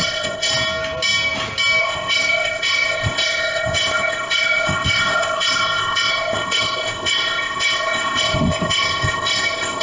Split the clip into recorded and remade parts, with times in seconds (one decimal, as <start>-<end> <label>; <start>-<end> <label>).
0.0-0.5 remade; 0.5-1.8 recorded; 1.8-9.8 remade